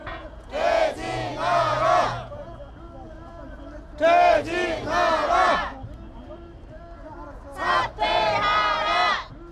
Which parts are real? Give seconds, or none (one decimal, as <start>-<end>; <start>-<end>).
2.7-9.5